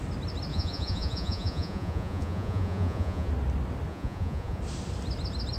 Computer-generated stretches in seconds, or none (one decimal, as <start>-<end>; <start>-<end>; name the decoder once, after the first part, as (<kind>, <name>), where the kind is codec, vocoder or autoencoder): 0.5-3.3 (vocoder, Vocos); 3.9-4.6